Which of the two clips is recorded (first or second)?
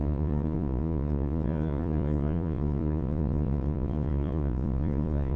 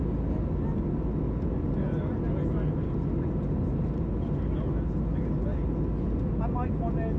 second